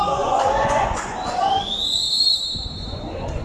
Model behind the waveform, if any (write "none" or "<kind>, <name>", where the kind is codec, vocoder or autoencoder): vocoder, Vocos